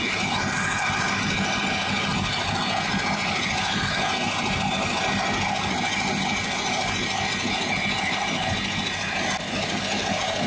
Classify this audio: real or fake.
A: real